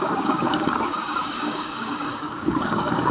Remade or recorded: remade